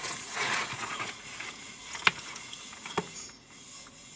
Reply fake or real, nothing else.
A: fake